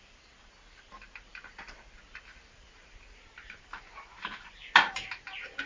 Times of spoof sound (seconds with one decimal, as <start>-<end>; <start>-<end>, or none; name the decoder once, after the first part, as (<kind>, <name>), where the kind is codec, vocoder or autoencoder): none

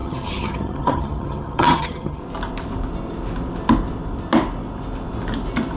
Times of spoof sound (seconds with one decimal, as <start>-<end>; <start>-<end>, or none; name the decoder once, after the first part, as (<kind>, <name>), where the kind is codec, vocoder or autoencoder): 0.0-2.2 (vocoder, HiFi-GAN)

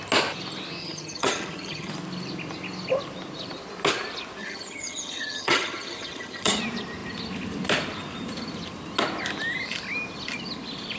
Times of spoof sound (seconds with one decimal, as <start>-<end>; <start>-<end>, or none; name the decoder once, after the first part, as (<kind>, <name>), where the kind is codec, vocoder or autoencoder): 0.8-1.9 (vocoder, HiFi-GAN); 4.4-6.6